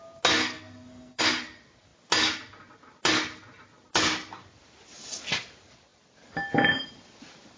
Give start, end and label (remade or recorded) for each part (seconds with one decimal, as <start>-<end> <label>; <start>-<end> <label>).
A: 0.0-0.4 recorded; 0.4-1.2 remade; 1.2-7.6 recorded